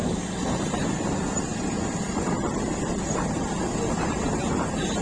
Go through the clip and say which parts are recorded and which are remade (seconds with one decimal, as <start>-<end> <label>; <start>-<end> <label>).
0.0-5.0 recorded